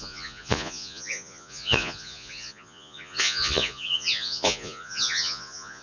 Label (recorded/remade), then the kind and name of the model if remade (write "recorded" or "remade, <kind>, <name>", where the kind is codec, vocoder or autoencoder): remade, vocoder, Vocos